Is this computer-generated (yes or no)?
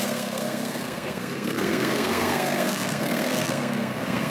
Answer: yes